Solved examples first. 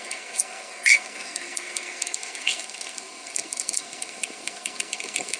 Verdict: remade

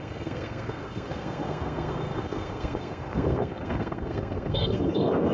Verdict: remade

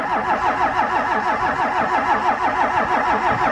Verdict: recorded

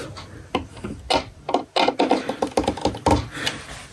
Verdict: recorded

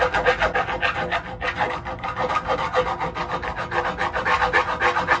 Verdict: recorded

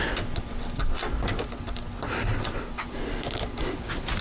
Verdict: recorded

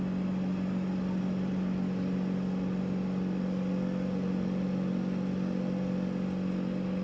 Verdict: recorded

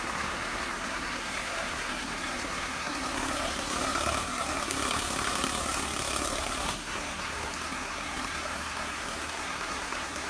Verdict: remade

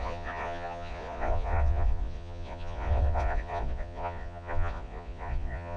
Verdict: remade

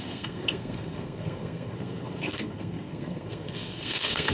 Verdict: remade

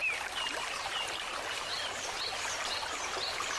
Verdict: recorded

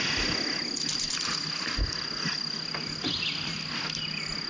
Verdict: recorded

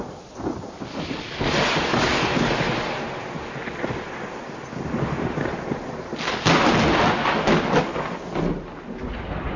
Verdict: recorded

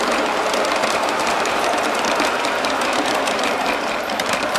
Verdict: remade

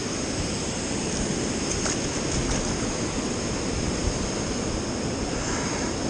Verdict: recorded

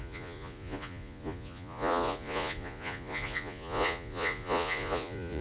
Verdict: remade